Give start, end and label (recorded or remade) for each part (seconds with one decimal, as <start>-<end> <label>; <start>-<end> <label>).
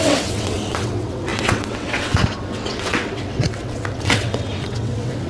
0.0-5.3 remade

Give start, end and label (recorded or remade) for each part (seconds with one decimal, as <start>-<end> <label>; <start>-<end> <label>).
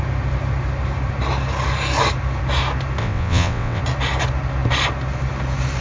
0.0-3.0 recorded; 3.0-3.8 remade; 3.8-5.8 recorded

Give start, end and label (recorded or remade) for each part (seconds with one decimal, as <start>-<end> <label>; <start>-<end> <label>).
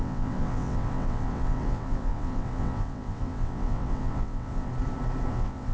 0.0-4.7 remade; 4.7-5.3 recorded; 5.3-5.7 remade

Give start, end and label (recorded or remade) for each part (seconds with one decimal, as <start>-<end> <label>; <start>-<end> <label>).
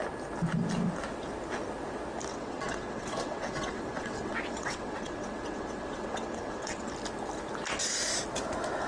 0.0-2.3 recorded; 2.3-6.9 remade; 6.9-8.9 recorded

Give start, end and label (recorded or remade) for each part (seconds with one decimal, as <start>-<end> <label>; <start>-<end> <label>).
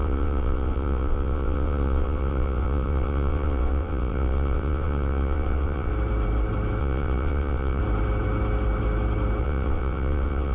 0.0-5.9 remade; 5.9-6.8 recorded; 6.8-7.8 remade; 7.8-9.4 recorded; 9.4-10.5 remade